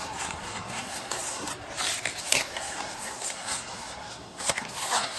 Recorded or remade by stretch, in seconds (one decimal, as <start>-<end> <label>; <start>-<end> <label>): 0.0-1.5 remade; 1.5-2.2 recorded; 2.2-5.2 remade